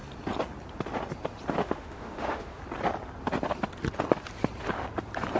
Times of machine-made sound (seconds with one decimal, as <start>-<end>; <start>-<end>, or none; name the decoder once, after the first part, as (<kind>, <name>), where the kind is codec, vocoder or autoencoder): 1.6-2.6 (autoencoder, DAC-VAE)